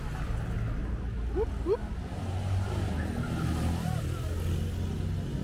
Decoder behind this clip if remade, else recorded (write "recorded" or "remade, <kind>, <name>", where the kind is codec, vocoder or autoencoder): recorded